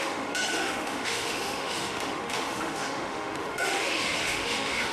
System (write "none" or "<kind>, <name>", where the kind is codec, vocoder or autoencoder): autoencoder, DAC-VAE